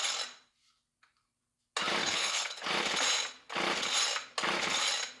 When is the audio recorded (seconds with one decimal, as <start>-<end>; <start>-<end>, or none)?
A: 0.0-2.0; 2.6-5.2